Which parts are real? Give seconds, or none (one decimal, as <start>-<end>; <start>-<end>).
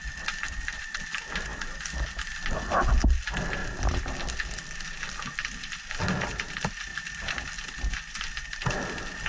0.0-9.3